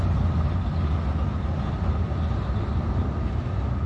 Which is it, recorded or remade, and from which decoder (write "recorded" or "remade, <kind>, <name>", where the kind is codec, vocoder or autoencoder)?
recorded